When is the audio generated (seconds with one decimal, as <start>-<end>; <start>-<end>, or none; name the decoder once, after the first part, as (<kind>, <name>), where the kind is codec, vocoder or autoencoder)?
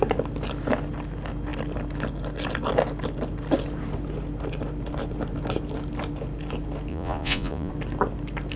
6.9-7.7 (vocoder, Vocos)